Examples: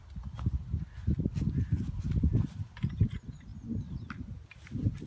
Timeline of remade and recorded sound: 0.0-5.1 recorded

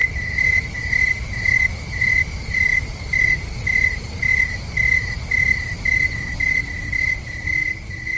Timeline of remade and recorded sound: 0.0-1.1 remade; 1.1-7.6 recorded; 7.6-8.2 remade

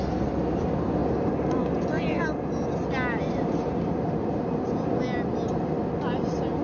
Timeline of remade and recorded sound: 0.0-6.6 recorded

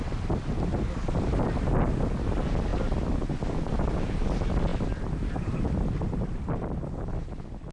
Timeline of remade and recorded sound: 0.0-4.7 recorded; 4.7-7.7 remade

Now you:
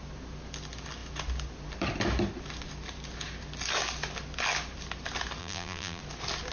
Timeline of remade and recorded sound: 0.0-5.4 recorded; 5.4-6.0 remade; 6.0-6.5 recorded

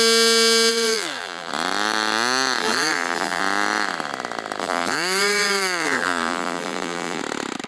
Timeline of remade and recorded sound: 0.0-0.7 recorded; 0.7-1.5 remade; 1.5-2.6 recorded; 2.6-3.4 remade; 3.4-4.6 recorded; 4.6-7.2 remade; 7.2-7.7 recorded